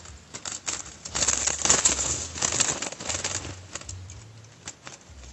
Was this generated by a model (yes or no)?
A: no